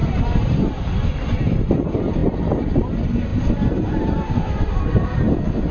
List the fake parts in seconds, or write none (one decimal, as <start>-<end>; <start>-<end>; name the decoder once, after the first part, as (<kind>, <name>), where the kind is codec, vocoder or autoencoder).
0.0-0.6 (vocoder, BigVGAN v2); 3.3-4.9